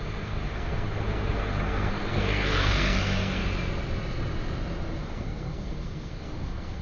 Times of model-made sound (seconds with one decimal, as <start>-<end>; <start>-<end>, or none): 0.0-3.4; 5.0-6.8